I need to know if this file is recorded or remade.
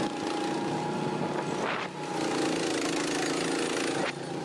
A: recorded